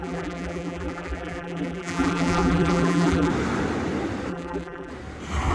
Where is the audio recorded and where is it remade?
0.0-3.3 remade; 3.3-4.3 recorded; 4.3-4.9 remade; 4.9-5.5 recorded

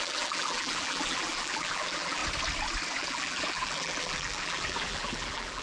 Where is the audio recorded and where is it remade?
0.0-2.2 remade; 2.2-3.0 recorded; 3.0-5.6 remade